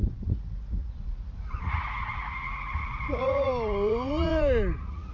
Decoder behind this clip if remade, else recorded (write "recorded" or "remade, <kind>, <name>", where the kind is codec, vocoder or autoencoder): remade, vocoder, Vocos